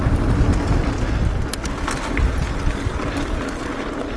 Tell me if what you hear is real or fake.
real